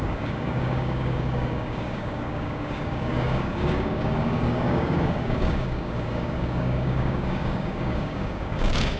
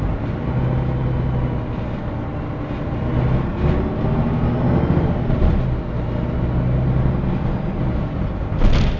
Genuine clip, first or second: second